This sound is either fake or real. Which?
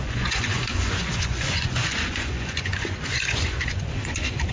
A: fake